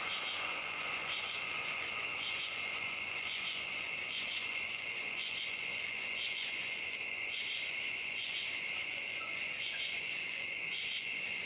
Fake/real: fake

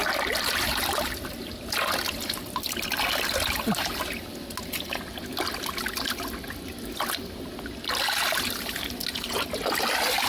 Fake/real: real